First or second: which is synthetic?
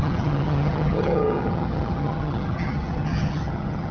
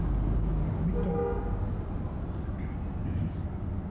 first